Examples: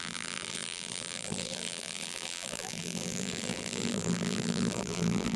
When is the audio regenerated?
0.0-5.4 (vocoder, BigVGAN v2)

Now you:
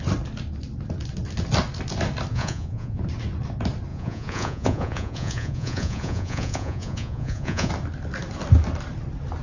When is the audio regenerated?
2.3-3.0 (vocoder, Vocos); 3.9-7.7

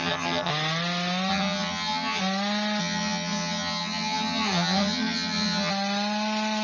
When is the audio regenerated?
0.0-0.5 (vocoder, HiFi-GAN); 1.3-2.2; 2.8-5.7

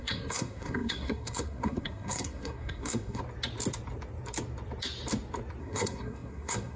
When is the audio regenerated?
0.0-3.2 (codec, SNAC); 5.6-6.8

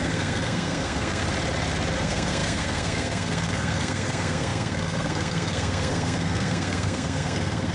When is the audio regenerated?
0.0-1.2 (codec, SNAC); 2.0-7.7

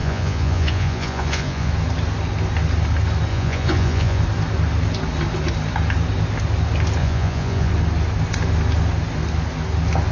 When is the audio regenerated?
0.0-1.7 (vocoder, Vocos); 3.3-4.2; 7.0-7.7

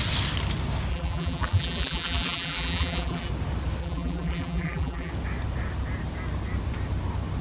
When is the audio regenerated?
0.9-3.3 (vocoder, BigVGAN v2); 3.8-5.1